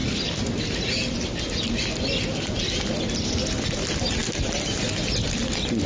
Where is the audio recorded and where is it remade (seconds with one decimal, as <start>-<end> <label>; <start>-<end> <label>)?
0.0-5.9 recorded